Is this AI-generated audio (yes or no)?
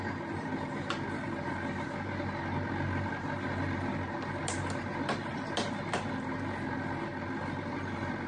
no